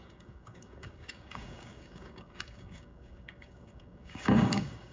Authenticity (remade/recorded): remade